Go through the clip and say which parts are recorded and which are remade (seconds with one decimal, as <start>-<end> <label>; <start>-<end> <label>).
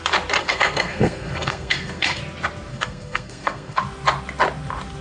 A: 0.0-0.4 recorded; 0.4-2.2 remade; 2.2-2.7 recorded; 2.7-3.8 remade; 3.8-5.0 recorded